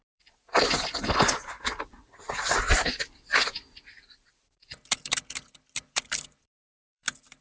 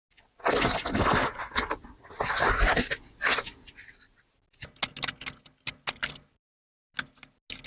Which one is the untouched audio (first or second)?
second